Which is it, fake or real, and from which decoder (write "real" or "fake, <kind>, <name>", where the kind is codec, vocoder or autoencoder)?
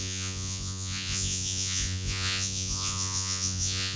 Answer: fake, vocoder, Vocos